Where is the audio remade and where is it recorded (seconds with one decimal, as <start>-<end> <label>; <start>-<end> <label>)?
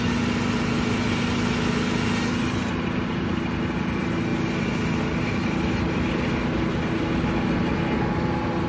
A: 0.0-8.7 recorded